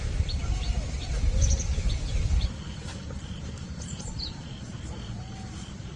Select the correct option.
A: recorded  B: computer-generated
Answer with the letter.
B